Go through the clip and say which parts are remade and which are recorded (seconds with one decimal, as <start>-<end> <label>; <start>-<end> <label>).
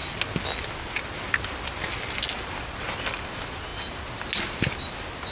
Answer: 0.0-5.3 recorded